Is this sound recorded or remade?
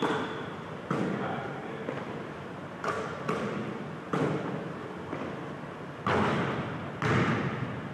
recorded